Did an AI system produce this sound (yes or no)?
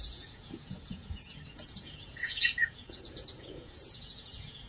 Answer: yes